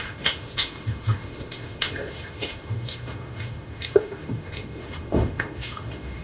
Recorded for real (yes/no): no